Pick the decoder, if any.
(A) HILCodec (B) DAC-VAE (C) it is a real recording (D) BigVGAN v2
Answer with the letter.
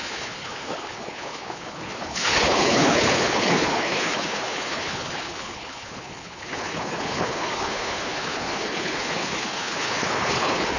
A